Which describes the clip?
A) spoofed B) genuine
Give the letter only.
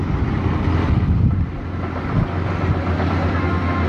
B